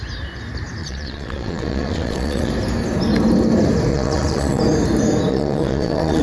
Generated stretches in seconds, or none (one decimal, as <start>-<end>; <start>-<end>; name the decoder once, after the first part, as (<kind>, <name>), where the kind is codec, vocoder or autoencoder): 0.8-2.5 (vocoder, WaveNeXt); 3.9-4.6; 5.3-6.2